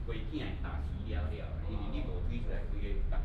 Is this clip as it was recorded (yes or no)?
yes